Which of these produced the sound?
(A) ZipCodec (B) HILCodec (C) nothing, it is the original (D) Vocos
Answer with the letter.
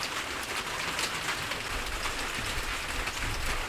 C